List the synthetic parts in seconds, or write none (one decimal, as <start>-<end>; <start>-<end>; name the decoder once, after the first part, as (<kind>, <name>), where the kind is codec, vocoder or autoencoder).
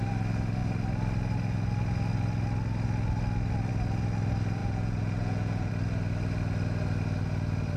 4.6-5.7 (vocoder, Vocos)